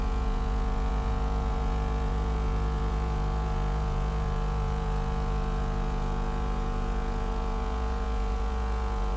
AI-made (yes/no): yes